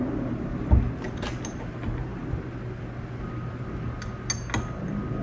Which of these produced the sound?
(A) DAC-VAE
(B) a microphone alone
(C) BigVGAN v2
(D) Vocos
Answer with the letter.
B